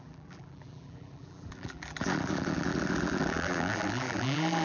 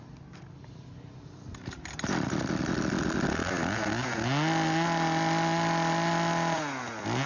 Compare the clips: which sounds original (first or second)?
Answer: second